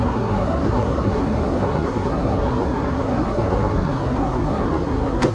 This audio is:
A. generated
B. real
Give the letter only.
A